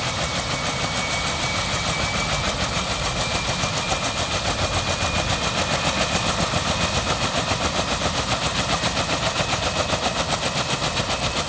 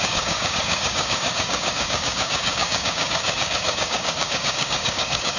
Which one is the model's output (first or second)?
second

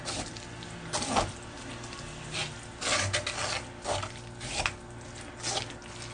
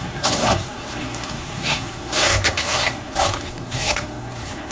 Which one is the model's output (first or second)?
second